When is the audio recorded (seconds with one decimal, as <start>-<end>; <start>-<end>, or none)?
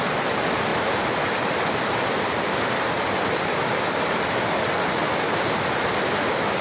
0.0-0.7; 2.6-6.6